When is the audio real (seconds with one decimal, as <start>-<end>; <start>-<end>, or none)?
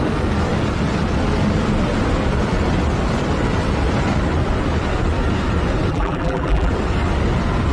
0.0-5.9; 6.7-7.7